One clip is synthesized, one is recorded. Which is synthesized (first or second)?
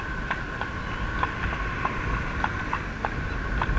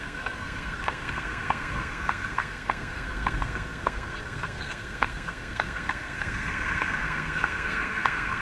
second